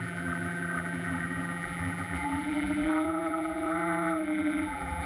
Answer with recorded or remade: remade